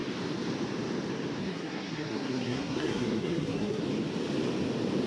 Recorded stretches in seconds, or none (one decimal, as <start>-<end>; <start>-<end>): 0.0-1.4; 3.8-5.1